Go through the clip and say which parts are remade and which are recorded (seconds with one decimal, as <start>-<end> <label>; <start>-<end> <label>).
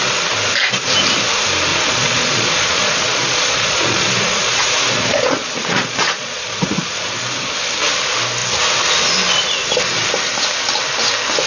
0.0-1.7 recorded; 1.7-6.9 remade; 6.9-11.5 recorded